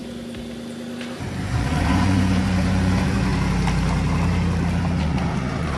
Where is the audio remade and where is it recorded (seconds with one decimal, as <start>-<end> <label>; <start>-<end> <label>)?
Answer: 0.0-1.4 recorded; 1.4-3.3 remade; 3.3-5.0 recorded; 5.0-5.8 remade